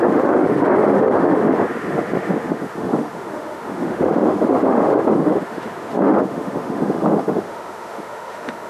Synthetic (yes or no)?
yes